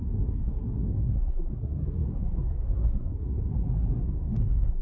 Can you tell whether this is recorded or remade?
remade